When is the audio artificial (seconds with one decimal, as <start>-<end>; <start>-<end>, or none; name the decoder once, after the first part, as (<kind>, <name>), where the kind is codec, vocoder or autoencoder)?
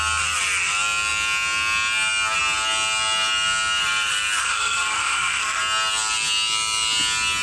4.4-5.6 (codec, SNAC)